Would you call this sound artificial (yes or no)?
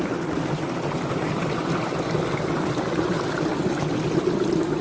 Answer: no